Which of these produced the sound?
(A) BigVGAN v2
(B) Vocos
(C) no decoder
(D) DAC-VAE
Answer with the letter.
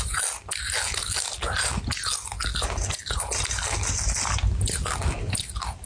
C